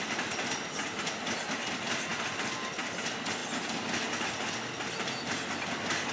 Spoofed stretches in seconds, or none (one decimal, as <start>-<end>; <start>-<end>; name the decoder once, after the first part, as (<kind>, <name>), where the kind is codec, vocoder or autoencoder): none